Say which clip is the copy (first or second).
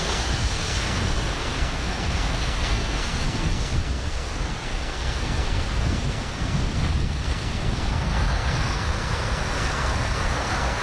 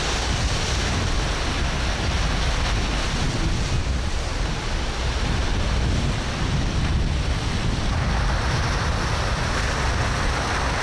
first